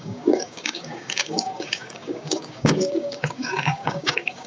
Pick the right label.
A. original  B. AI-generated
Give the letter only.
B